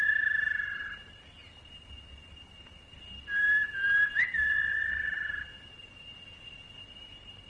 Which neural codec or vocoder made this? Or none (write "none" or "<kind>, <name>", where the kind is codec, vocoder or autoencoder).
none